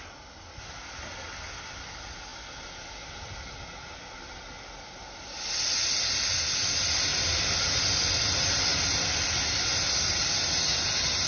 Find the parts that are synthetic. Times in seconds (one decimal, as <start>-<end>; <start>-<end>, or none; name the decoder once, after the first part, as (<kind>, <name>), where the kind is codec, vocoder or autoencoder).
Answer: none